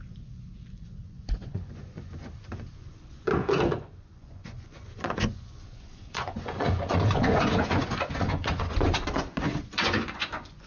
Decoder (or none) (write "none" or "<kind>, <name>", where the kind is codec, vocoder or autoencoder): vocoder, Vocos